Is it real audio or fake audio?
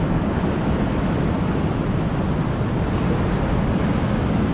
real